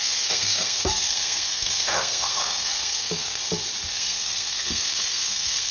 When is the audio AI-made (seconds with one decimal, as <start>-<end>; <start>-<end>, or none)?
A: 0.0-3.4; 3.9-5.7